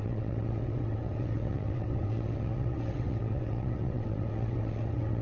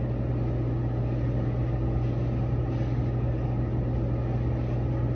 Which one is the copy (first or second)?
first